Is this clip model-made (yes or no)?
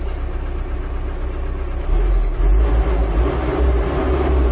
no